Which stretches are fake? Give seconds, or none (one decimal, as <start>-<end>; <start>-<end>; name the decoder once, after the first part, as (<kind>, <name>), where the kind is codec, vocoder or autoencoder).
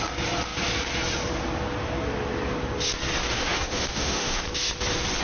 3.3-4.4 (autoencoder, DAC-VAE)